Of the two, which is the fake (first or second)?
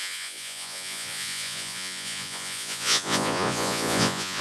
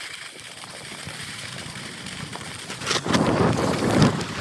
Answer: first